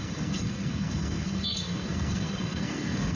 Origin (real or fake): fake